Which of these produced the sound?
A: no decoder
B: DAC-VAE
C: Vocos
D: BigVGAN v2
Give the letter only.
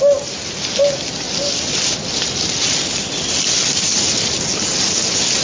A